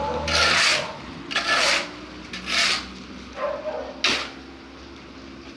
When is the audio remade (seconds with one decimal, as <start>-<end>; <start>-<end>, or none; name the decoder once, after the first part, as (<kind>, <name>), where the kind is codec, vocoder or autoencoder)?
none